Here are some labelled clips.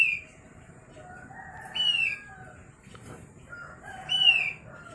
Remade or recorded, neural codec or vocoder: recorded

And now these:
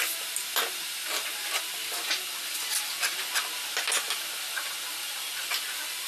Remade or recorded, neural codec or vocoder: recorded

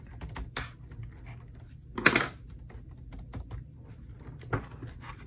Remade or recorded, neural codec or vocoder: recorded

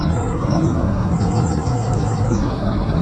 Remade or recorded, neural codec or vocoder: remade, codec, SNAC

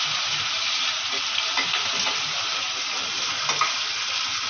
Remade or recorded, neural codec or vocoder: recorded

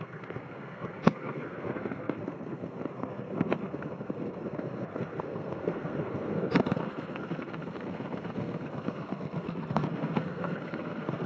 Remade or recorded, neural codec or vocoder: remade, codec, SNAC